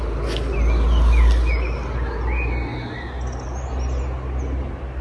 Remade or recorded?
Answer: recorded